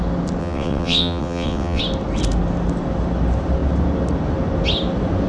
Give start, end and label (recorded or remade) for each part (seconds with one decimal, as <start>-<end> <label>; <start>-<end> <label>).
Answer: 0.0-0.4 recorded; 0.4-1.8 remade; 1.8-5.3 recorded